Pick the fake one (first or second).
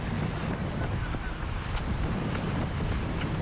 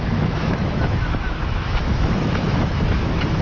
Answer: second